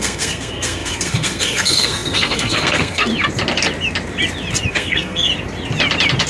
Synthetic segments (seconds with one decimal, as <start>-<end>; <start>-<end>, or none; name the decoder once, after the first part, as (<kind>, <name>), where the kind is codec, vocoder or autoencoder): 0.0-3.1 (codec, SNAC); 4.7-5.3

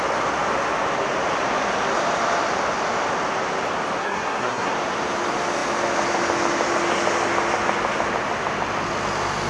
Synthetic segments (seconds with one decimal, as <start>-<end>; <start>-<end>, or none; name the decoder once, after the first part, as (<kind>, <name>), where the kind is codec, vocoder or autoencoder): 4.0-4.7 (codec, SNAC)

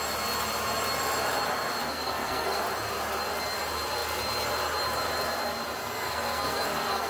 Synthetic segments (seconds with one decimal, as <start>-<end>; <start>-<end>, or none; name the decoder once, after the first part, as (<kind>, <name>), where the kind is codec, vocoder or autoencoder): 1.8-2.6 (codec, SNAC); 5.8-7.1